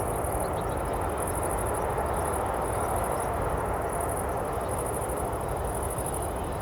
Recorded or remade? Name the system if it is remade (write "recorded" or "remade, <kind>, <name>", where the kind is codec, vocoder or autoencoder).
recorded